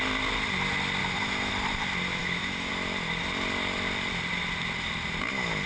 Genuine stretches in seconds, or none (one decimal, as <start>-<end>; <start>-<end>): 0.0-1.0; 1.5-2.2; 2.7-5.7